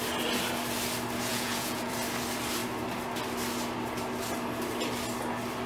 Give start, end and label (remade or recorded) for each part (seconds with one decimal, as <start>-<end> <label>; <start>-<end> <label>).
0.0-1.3 recorded; 1.3-1.9 remade; 1.9-5.7 recorded